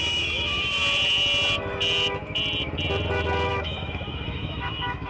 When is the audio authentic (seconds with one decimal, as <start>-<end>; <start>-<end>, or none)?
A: 0.8-3.5